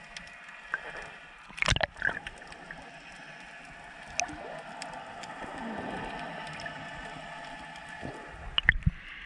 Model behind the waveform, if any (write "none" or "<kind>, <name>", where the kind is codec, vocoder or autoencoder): none